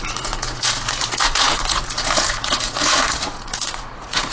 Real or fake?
fake